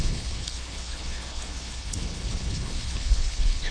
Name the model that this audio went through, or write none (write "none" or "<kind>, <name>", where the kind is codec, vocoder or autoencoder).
codec, HILCodec